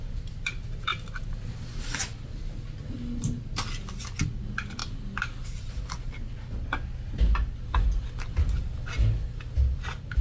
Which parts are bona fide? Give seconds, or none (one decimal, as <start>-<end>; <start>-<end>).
0.0-10.2

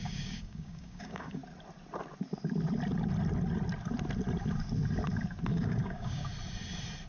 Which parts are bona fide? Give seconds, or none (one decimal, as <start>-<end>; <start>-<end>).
1.4-5.5; 6.3-7.1

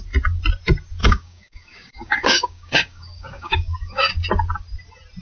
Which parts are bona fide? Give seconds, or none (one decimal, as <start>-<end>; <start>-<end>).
0.0-1.0; 4.1-5.2

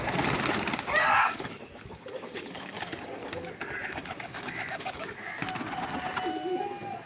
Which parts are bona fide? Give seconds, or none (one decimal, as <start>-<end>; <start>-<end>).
0.0-1.0; 5.3-7.1

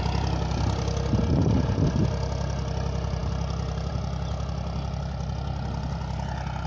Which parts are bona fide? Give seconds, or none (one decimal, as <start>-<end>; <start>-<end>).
0.0-6.7